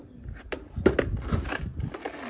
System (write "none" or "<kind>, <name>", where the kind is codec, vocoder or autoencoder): none